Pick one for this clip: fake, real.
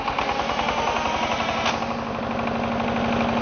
real